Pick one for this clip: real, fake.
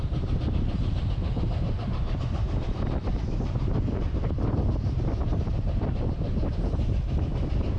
fake